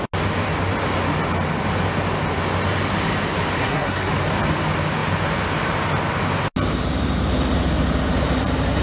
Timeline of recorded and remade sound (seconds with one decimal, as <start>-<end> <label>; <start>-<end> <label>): 0.0-3.6 recorded; 3.6-4.1 remade; 4.1-8.8 recorded

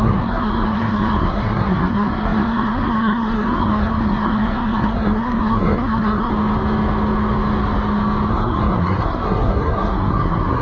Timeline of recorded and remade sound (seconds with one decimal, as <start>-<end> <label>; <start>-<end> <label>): 0.0-6.3 remade; 6.3-8.3 recorded; 8.3-10.6 remade

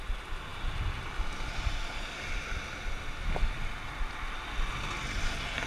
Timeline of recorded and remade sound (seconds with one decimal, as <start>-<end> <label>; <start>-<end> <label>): 0.0-5.7 recorded

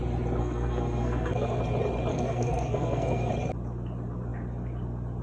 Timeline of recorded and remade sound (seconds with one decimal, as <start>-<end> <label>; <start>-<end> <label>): 0.0-0.4 recorded; 0.4-1.6 remade; 1.6-2.1 recorded; 2.1-3.3 remade; 3.3-5.2 recorded

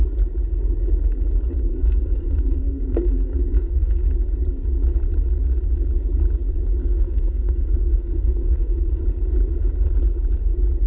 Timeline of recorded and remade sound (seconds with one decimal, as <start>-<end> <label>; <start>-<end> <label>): 0.0-1.7 recorded; 1.7-4.0 remade; 4.0-6.8 recorded; 6.8-9.0 remade; 9.0-10.9 recorded

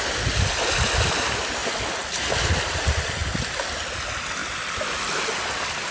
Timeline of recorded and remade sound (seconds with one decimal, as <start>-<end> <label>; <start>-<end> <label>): 0.0-5.9 recorded

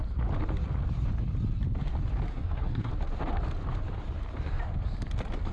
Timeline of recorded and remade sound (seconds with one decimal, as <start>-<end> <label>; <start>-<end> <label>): 0.0-2.3 recorded; 2.3-2.9 remade; 2.9-5.5 recorded

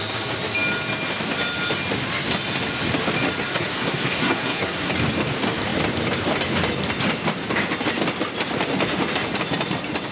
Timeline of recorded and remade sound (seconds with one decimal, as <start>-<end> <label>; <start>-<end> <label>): 0.0-3.5 recorded; 3.5-4.9 remade; 4.9-10.1 recorded